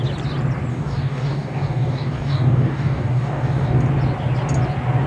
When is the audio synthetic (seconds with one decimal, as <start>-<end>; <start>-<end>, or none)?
0.7-3.8